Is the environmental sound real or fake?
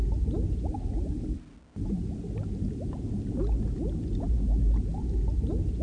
real